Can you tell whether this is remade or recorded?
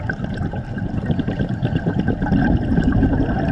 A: recorded